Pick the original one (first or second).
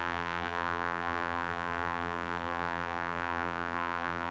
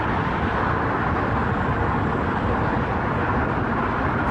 second